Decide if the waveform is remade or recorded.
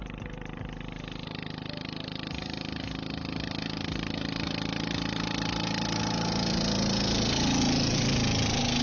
recorded